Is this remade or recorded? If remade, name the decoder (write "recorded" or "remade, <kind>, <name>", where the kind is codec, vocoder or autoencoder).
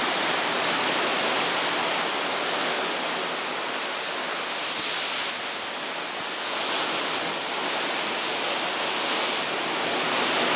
recorded